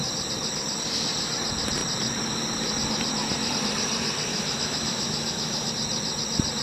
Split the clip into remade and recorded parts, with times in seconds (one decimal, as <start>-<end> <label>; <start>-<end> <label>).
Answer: 0.0-4.3 recorded; 4.3-5.7 remade; 5.7-6.6 recorded